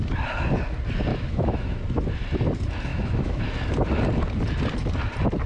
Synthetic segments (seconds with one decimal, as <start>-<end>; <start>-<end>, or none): 1.1-1.8; 2.9-3.4